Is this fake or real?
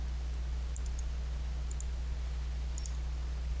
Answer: real